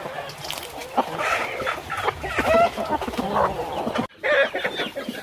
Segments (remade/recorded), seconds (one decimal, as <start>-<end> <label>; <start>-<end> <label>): 0.0-5.2 recorded